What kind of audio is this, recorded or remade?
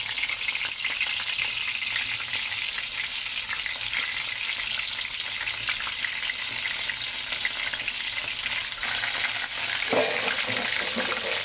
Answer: recorded